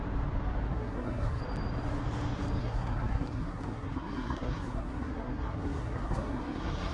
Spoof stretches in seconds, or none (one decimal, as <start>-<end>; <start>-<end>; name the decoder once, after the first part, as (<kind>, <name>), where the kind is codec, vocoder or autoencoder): 0.7-1.4 (codec, SNAC); 2.6-6.9